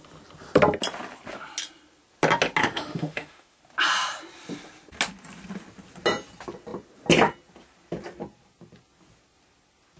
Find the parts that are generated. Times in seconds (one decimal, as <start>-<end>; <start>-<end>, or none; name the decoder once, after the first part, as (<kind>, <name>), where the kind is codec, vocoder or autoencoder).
2.6-3.6 (autoencoder, DAC-VAE)